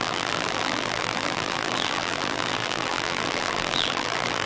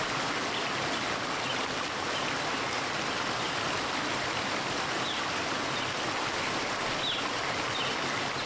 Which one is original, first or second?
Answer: second